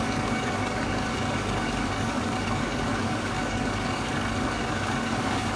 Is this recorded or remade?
remade